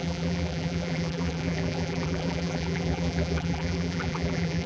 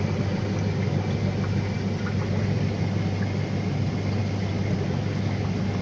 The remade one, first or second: first